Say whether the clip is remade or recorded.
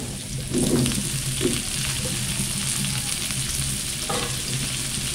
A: recorded